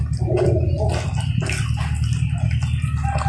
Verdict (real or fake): real